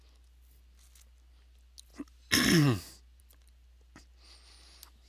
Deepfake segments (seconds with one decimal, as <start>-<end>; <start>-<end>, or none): none